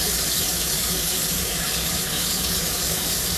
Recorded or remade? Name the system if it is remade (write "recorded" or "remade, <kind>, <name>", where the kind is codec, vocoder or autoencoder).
remade, codec, DAC